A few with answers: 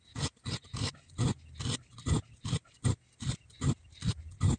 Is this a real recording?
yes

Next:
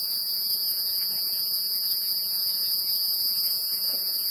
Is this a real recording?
no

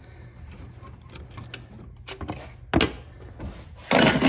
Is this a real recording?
yes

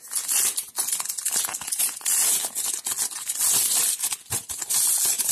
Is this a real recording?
yes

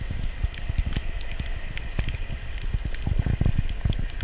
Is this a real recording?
yes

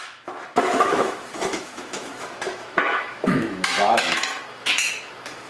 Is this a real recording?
no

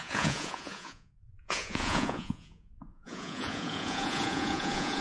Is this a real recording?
no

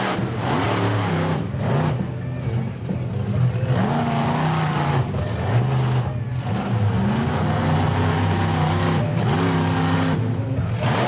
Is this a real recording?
yes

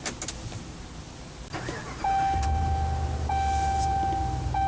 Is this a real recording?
yes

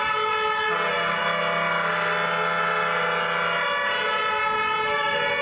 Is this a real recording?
yes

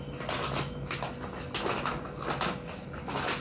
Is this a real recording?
yes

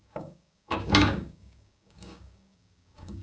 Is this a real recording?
no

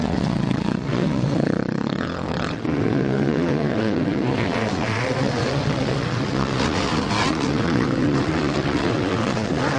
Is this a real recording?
no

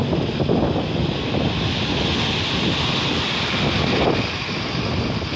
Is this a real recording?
yes